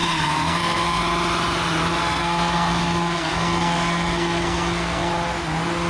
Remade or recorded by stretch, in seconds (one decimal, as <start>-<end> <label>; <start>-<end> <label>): 0.0-1.0 remade; 1.0-2.0 recorded; 2.0-5.1 remade; 5.1-5.9 recorded